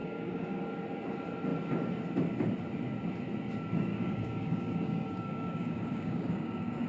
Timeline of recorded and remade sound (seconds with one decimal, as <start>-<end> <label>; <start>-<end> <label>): 0.0-0.6 remade; 0.6-3.9 recorded; 3.9-6.9 remade